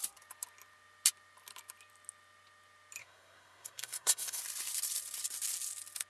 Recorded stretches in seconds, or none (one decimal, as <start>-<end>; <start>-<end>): 0.0-3.0; 4.4-6.1